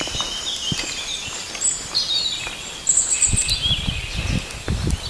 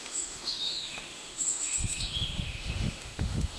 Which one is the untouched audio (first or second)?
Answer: first